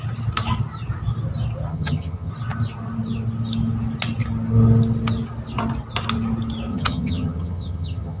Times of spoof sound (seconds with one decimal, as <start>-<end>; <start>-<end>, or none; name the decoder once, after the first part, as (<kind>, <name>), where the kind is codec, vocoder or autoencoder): 1.7-2.3 (vocoder, HiFi-GAN); 6.7-8.2